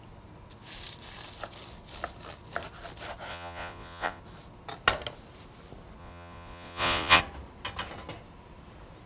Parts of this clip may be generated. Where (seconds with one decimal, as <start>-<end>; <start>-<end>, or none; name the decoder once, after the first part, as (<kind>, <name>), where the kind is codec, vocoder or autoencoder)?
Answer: 3.3-4.2 (vocoder, Vocos); 6.0-7.2